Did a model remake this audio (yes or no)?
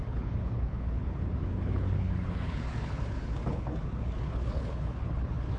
yes